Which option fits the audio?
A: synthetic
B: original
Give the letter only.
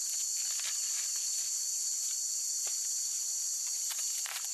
B